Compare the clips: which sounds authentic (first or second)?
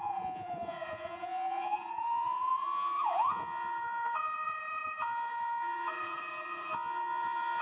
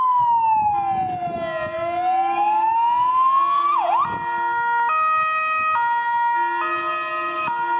second